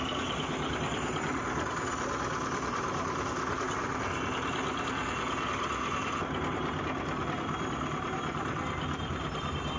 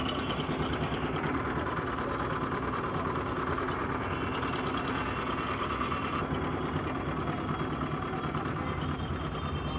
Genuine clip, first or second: second